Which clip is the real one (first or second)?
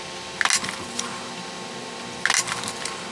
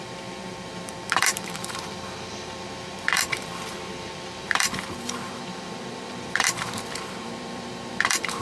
first